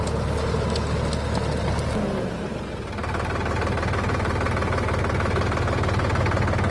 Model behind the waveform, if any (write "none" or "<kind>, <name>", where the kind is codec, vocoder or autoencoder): none